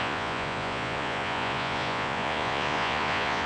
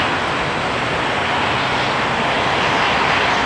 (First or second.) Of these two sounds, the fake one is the first